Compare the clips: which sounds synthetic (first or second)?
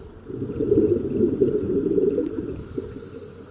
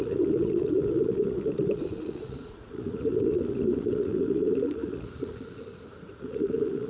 second